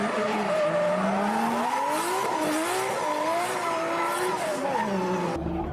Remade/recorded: recorded